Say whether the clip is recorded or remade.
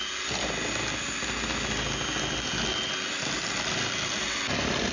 recorded